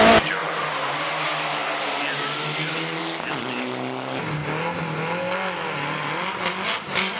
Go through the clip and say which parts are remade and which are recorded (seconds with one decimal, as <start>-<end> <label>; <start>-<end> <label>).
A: 0.0-7.2 recorded